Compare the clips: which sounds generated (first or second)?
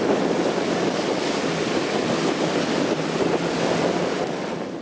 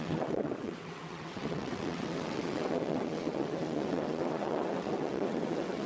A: second